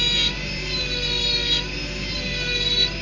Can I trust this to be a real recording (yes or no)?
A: no